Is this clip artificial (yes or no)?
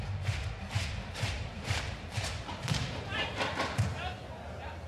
yes